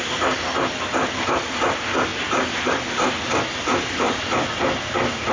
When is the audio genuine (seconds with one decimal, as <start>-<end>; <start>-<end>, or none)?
0.0-5.3